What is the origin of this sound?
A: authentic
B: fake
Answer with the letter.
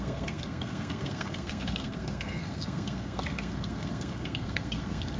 B